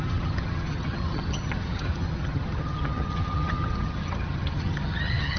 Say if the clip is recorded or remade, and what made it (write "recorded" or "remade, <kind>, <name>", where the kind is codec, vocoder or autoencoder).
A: remade, vocoder, HiFi-GAN